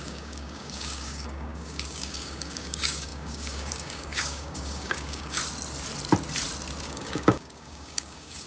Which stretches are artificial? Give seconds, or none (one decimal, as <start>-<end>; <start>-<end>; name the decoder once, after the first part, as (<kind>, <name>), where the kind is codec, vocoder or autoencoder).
0.0-5.4 (codec, DAC); 6.8-8.5